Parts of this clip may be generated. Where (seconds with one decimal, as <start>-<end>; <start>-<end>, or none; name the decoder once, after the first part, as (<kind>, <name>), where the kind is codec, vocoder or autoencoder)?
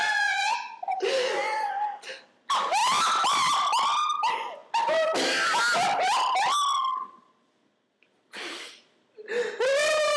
0.0-1.7 (vocoder, Vocos)